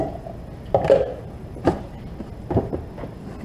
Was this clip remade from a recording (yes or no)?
no